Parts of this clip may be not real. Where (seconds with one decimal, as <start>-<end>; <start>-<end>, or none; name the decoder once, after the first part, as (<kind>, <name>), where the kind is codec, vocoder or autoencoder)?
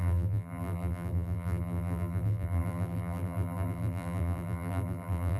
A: 0.0-5.4 (vocoder, BigVGAN v2)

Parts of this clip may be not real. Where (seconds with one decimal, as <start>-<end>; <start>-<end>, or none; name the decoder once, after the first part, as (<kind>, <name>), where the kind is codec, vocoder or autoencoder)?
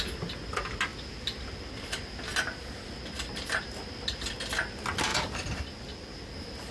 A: 0.9-4.3 (vocoder, BigVGAN v2); 5.1-6.7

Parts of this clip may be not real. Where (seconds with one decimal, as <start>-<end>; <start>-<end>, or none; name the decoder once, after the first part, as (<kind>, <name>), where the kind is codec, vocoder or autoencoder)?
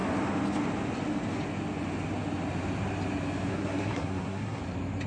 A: 3.5-4.6 (codec, SNAC)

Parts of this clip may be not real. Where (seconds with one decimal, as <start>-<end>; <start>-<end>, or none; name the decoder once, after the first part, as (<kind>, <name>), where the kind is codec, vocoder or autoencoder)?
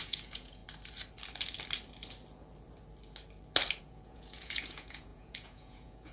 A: 0.0-0.6 (vocoder, Vocos); 3.8-6.1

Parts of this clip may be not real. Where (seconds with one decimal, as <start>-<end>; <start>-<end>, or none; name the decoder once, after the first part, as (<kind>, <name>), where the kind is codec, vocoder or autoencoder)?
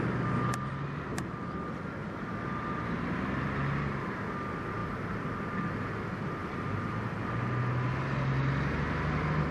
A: 1.1-1.8 (vocoder, BigVGAN v2); 4.8-5.4; 6.4-7.3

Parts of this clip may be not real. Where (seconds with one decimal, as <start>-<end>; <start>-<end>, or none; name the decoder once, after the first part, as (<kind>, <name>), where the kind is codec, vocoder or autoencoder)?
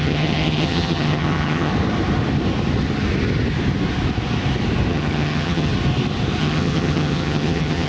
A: 0.0-1.7 (vocoder, HiFi-GAN); 4.9-5.7; 6.4-7.9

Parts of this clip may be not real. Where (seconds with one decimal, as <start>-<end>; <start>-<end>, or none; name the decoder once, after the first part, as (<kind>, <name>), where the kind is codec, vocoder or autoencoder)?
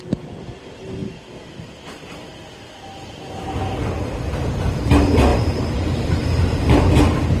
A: 5.3-7.0 (vocoder, BigVGAN v2)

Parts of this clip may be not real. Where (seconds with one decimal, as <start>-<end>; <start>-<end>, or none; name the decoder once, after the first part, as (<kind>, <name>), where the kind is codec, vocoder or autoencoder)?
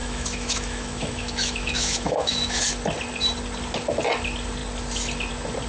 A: 0.0-2.6 (autoencoder, DAC-VAE)